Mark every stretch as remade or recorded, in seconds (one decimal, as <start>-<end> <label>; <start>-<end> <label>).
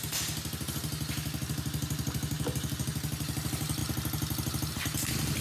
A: 0.0-5.4 recorded